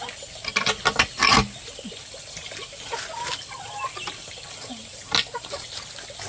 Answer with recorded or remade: recorded